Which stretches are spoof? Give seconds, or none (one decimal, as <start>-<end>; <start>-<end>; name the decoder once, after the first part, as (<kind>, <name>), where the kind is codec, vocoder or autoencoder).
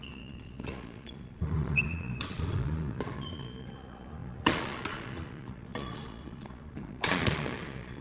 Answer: 0.0-8.0 (vocoder, Vocos)